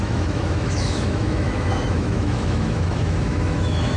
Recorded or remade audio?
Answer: remade